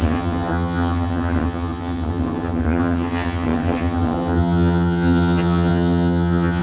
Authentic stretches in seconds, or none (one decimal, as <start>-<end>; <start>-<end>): none